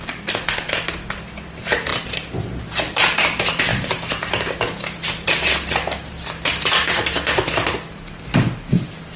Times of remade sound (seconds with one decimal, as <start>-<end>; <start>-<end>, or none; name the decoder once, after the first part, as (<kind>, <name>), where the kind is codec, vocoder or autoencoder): 0.0-3.7 (vocoder, BigVGAN v2); 7.7-9.2